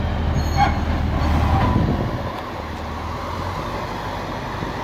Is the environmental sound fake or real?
real